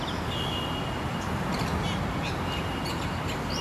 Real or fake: real